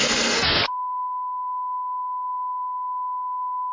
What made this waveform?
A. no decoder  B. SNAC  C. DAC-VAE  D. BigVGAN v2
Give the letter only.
B